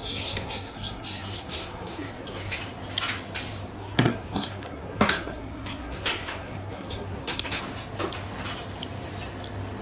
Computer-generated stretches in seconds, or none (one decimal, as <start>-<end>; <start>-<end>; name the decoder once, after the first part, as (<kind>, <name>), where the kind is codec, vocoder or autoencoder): 0.0-2.6 (codec, SNAC); 3.8-7.6